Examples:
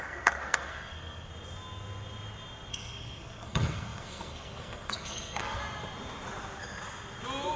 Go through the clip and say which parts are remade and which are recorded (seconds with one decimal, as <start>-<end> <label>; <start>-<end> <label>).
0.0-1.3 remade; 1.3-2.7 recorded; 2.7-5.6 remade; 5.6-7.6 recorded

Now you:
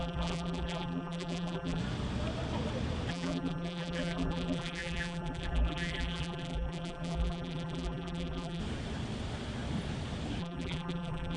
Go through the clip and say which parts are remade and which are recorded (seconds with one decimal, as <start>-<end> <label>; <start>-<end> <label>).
0.0-1.8 remade; 1.8-3.1 recorded; 3.1-8.6 remade; 8.6-10.4 recorded; 10.4-11.4 remade

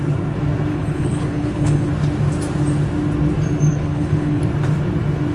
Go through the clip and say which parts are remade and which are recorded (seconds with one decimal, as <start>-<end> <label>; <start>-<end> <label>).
0.0-0.7 recorded; 0.7-1.9 remade; 1.9-3.7 recorded; 3.7-4.4 remade; 4.4-5.3 recorded

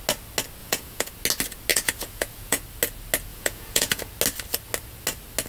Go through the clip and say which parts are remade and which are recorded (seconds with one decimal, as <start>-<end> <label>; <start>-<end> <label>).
0.0-0.6 recorded; 0.6-1.1 remade; 1.1-1.7 recorded; 1.7-2.6 remade; 2.6-3.3 recorded; 3.3-4.0 remade; 4.0-5.5 recorded